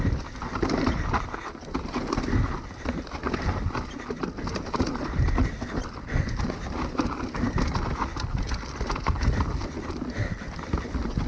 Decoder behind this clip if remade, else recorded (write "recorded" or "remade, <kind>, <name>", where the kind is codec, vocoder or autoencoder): recorded